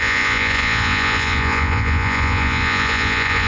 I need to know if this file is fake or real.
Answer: fake